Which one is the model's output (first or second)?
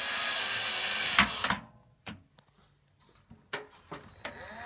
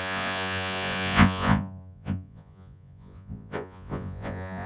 second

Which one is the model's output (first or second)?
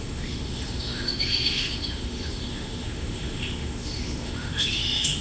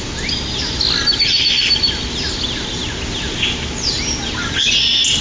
first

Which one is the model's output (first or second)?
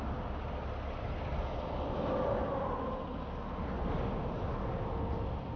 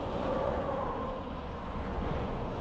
second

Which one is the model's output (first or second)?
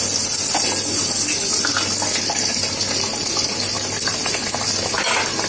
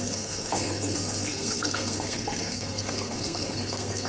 second